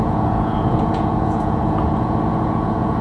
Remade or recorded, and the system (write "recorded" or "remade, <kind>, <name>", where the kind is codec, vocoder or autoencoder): remade, vocoder, Vocos